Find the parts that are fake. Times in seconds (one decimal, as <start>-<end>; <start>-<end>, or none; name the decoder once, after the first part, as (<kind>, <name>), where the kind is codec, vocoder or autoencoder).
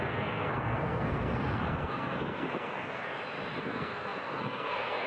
0.0-3.1 (codec, SNAC); 3.6-5.1